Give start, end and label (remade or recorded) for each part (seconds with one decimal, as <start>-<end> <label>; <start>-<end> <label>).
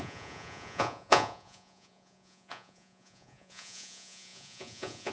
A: 0.0-5.1 remade